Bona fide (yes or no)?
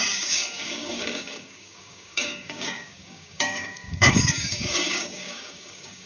no